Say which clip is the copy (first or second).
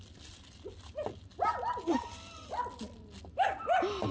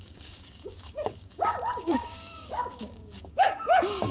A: second